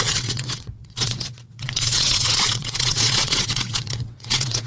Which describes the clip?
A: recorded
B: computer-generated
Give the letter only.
B